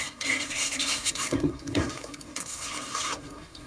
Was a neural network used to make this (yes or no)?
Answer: yes